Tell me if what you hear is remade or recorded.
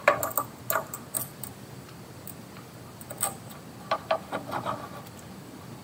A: recorded